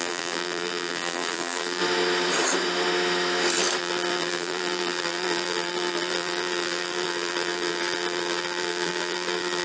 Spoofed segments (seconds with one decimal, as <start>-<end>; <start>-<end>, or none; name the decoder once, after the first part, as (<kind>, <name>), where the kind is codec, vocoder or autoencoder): 0.0-1.8 (vocoder, BigVGAN v2); 3.8-9.6